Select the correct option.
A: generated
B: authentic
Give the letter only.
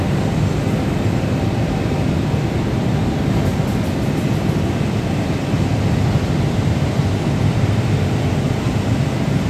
A